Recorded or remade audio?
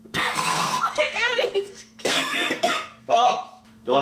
remade